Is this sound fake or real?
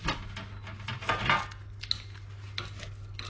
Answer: real